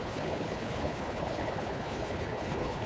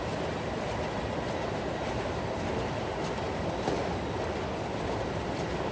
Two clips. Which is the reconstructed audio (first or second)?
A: first